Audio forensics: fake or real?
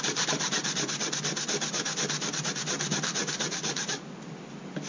real